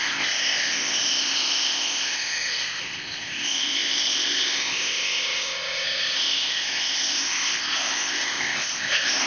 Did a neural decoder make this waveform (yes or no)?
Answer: yes